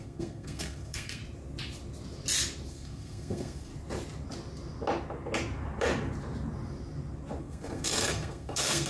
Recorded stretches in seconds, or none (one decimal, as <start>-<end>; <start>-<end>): 1.2-2.7; 3.7-7.4